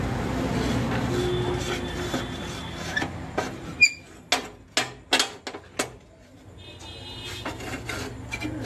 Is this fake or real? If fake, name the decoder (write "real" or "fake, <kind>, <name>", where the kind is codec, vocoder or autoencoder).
real